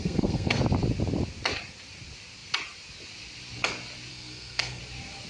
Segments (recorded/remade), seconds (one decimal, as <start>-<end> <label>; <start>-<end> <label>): 0.0-0.6 remade; 0.6-4.1 recorded; 4.1-4.8 remade; 4.8-5.3 recorded